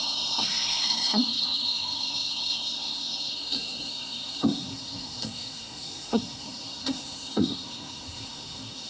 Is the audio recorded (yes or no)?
no